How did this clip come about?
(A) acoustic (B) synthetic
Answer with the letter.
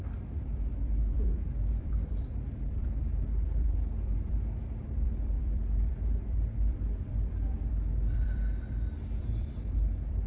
B